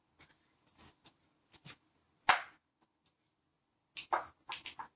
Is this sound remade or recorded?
recorded